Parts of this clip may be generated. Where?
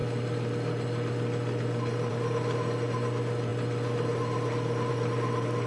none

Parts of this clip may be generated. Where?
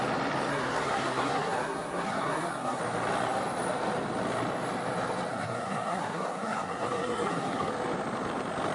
0.5-2.8 (codec, SNAC); 5.3-7.7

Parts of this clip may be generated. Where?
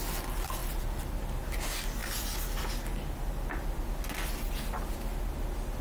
none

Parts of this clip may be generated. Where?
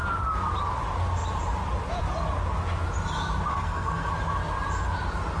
3.5-4.1 (codec, SNAC)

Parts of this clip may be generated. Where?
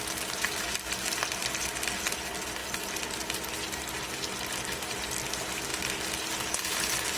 none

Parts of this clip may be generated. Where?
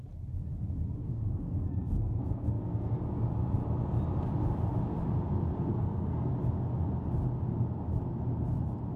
1.0-3.0 (codec, SNAC); 5.7-6.3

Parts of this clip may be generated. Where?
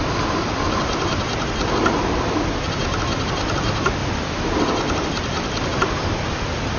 none